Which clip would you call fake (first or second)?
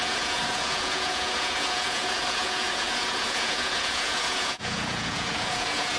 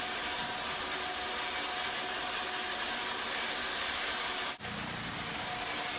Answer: first